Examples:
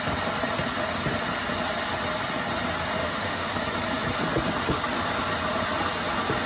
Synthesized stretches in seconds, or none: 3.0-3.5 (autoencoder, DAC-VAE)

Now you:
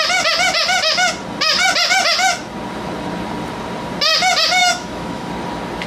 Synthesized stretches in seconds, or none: 4.6-5.3 (autoencoder, DAC-VAE)

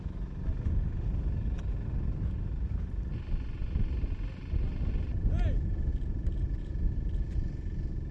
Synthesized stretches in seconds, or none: none

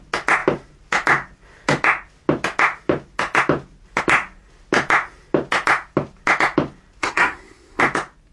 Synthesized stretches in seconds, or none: 7.0-7.8 (codec, SNAC)

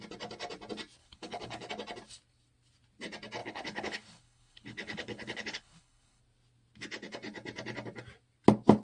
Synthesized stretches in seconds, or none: 1.0-1.7 (codec, HILCodec); 3.4-6.2

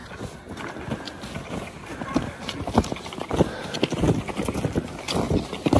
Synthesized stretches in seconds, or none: none

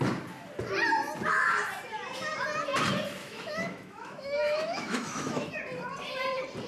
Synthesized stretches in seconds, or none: 3.2-5.5 (autoencoder, DAC-VAE)

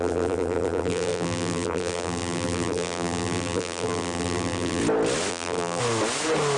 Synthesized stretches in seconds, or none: 0.0-4.8 (vocoder, BigVGAN v2); 5.3-5.8